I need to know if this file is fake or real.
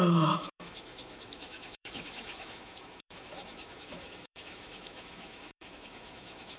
fake